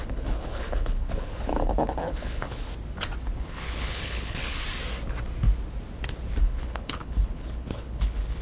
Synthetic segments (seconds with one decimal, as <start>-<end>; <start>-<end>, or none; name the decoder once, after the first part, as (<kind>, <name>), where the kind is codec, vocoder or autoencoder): 0.0-2.7 (codec, HILCodec); 3.4-4.5; 6.4-8.4